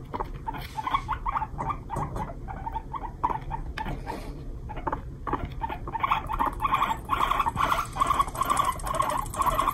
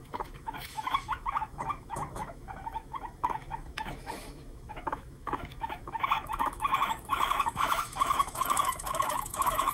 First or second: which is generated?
second